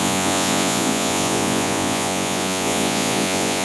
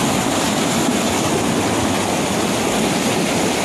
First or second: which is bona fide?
second